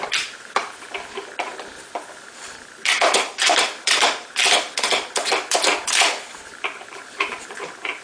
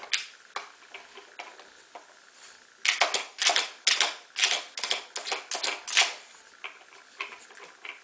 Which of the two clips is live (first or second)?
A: second